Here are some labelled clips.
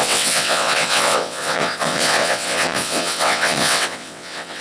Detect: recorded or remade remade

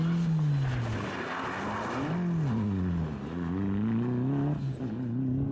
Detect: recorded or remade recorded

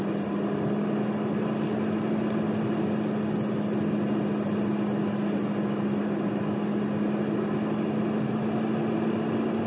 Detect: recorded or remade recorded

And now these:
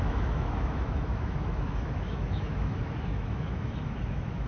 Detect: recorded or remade remade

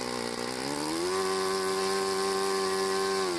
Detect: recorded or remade recorded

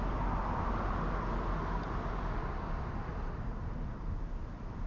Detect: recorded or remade recorded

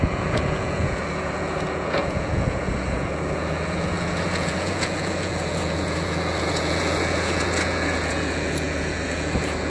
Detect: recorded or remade remade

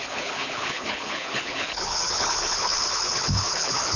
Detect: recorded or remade remade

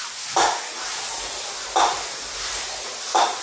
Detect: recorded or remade recorded